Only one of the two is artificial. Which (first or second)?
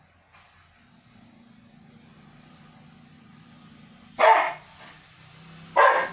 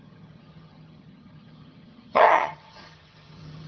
second